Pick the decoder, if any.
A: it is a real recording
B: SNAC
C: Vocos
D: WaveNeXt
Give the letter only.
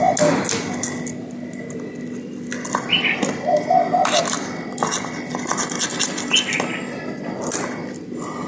A